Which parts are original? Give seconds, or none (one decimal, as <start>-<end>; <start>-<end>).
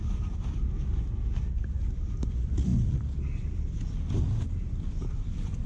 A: 0.0-5.7